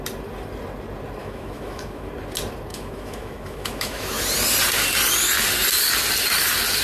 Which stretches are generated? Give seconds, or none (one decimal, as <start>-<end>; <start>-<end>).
1.2-2.1; 2.7-4.2

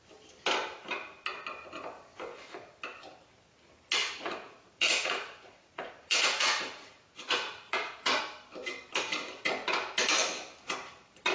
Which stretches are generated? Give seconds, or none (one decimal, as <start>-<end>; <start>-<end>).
4.0-8.2

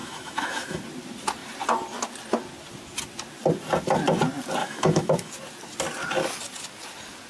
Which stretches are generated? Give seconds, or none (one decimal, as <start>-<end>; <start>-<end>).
0.0-0.8; 4.6-5.3

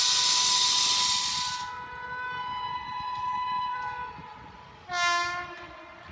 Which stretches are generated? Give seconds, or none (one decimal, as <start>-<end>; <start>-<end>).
none

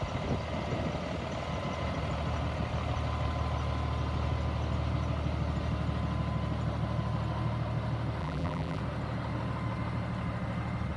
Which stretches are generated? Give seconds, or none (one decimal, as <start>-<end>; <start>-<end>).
8.2-8.8

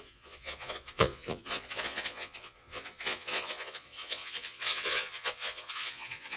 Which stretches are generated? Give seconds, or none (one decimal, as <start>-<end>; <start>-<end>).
0.0-6.4